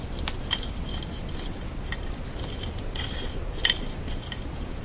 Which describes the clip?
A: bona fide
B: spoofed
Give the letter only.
A